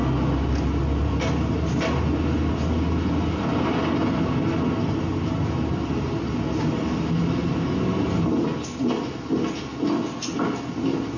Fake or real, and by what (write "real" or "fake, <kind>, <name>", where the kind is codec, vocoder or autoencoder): real